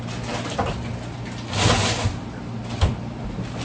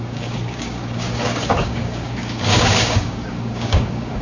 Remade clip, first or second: second